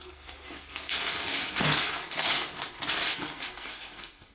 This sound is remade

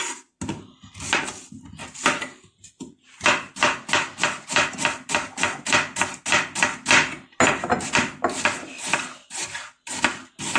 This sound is recorded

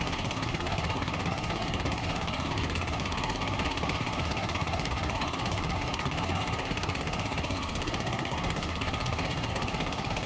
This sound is remade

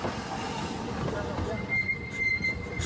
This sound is recorded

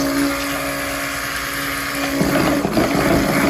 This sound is recorded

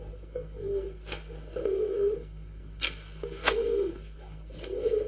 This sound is remade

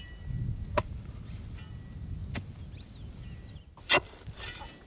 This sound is recorded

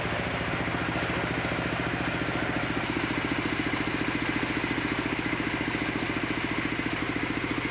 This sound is recorded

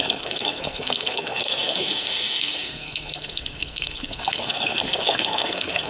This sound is remade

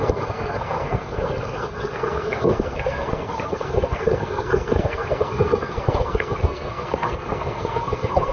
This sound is remade